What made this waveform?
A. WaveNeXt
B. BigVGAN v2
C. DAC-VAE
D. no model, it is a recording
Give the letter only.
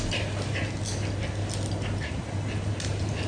D